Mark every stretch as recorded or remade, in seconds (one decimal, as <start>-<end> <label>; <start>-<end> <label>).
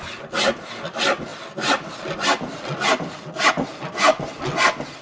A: 0.0-5.0 recorded